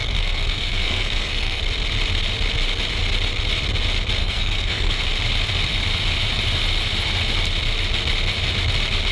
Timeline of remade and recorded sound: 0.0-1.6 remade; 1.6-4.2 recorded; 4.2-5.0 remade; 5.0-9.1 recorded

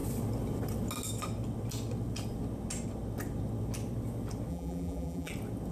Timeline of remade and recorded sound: 0.0-4.5 recorded; 4.5-5.3 remade; 5.3-5.7 recorded

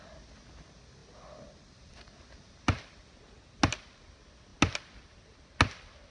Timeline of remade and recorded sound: 0.0-6.1 recorded